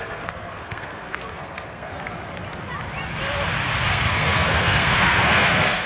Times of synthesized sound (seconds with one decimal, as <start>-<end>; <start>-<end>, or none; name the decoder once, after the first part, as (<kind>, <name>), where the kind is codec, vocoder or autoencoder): 0.0-1.9 (codec, SNAC); 3.9-5.9